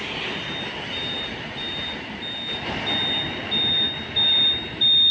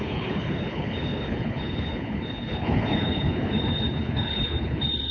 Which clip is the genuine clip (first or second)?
first